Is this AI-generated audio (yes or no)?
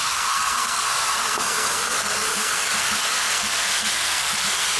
yes